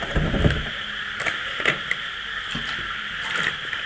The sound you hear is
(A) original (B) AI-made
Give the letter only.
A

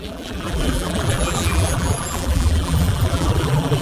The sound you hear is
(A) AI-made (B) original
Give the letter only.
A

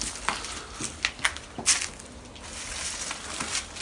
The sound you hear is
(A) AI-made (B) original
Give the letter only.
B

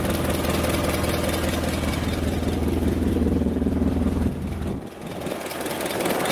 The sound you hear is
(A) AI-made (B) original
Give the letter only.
B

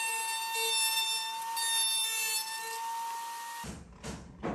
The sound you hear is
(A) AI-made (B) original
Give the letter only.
B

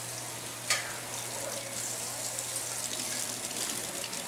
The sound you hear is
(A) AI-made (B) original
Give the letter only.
B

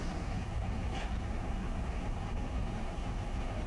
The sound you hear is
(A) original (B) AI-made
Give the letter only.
B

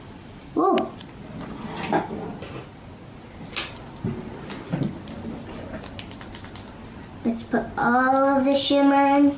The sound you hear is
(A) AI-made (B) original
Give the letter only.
B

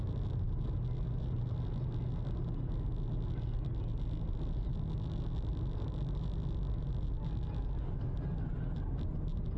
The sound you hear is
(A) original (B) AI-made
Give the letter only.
A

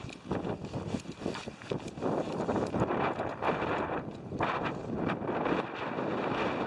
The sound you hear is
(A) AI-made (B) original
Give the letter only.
B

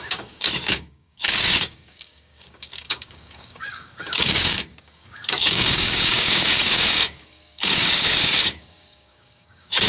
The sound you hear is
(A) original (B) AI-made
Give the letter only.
B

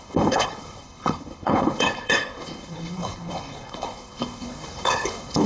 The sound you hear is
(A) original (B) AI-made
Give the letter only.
B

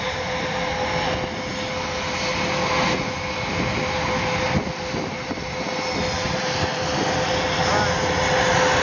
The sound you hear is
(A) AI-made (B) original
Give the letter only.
B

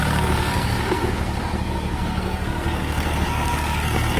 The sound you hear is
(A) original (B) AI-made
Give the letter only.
B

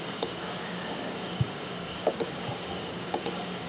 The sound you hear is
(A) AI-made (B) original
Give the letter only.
A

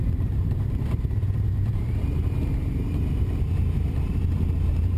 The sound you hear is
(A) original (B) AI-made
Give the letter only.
B